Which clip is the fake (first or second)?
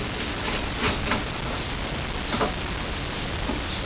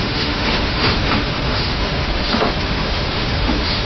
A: second